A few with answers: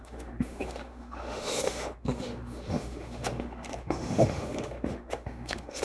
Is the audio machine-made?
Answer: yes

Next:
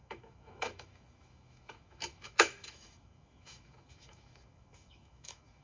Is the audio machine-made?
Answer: yes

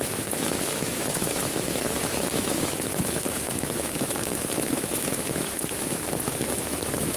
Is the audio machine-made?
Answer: yes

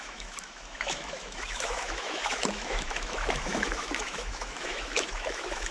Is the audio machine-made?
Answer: yes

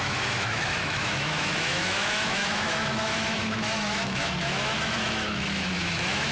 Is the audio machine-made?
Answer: yes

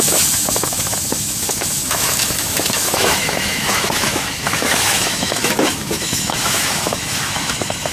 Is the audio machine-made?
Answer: yes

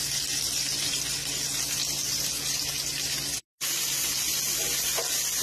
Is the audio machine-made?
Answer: no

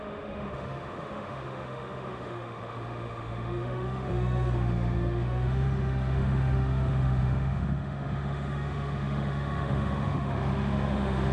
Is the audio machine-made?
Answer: yes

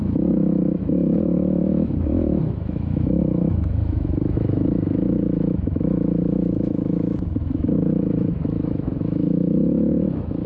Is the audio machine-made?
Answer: yes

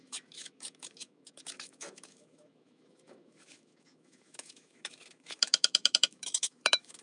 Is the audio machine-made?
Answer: yes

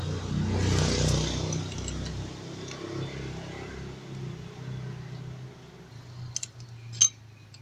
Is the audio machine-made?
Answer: no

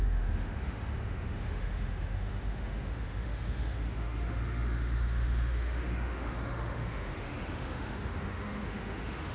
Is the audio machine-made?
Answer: yes